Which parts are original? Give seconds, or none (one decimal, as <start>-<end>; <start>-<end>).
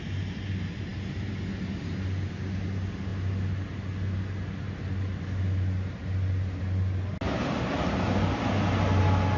0.0-9.4